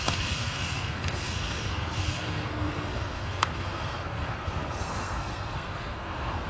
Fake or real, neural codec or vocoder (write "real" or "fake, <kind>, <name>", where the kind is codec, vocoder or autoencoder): fake, codec, SNAC